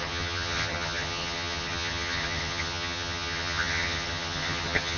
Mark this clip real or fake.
fake